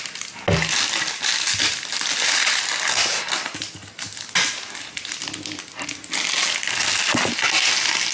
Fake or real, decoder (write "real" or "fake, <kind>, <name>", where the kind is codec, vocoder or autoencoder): real